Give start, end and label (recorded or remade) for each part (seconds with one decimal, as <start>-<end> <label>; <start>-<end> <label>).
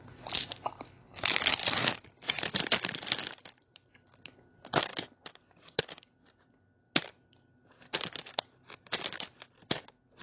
0.0-10.2 recorded